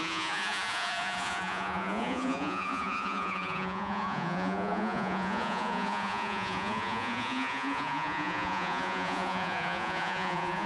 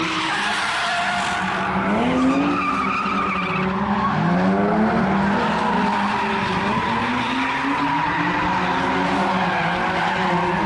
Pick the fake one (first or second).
first